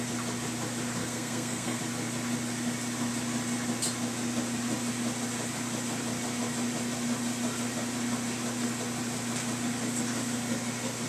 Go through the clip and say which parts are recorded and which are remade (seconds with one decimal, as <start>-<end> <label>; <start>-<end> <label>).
0.0-1.0 recorded; 1.0-1.8 remade; 1.8-11.1 recorded